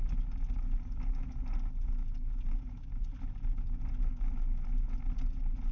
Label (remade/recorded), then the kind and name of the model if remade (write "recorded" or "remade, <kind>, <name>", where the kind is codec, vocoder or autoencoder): recorded